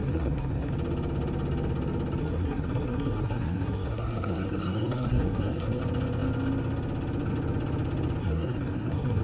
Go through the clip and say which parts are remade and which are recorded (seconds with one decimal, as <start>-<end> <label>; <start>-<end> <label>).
0.0-0.7 remade; 0.7-2.2 recorded; 2.2-5.8 remade; 5.8-8.2 recorded; 8.2-9.2 remade